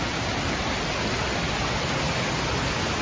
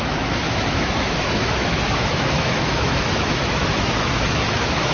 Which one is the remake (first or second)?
second